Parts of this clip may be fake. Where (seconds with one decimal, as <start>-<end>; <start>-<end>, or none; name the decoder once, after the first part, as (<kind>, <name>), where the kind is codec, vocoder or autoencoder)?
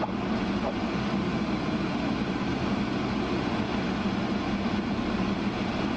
none